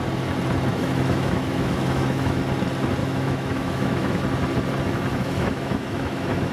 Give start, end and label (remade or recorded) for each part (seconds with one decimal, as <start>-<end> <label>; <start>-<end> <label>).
0.0-0.7 recorded; 0.7-2.4 remade; 2.4-3.0 recorded; 3.0-4.2 remade; 4.2-5.1 recorded; 5.1-6.5 remade